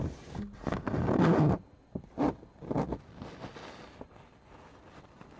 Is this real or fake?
real